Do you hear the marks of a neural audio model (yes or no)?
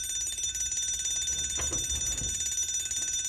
no